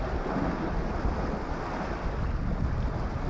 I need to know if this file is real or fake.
real